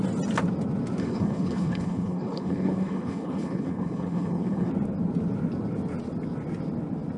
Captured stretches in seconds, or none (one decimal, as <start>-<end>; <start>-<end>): 0.0-1.0; 4.7-7.2